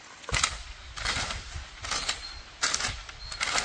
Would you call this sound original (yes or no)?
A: yes